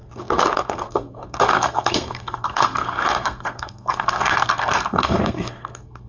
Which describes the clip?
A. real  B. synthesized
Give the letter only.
B